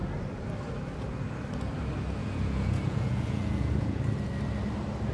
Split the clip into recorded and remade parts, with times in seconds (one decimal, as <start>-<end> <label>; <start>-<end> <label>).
0.0-2.2 recorded; 2.2-4.0 remade; 4.0-5.1 recorded